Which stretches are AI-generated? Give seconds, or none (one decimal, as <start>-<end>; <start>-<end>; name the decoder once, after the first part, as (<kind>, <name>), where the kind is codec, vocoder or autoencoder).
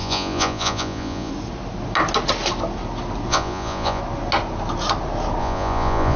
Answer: 0.0-1.3 (vocoder, Vocos); 3.3-4.0; 5.4-6.2